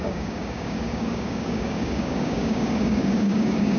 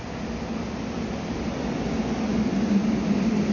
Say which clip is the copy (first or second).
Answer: first